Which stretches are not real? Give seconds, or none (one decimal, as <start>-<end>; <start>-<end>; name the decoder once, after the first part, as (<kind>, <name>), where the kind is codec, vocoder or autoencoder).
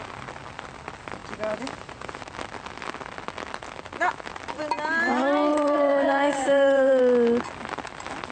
5.5-7.0 (vocoder, WaveNeXt)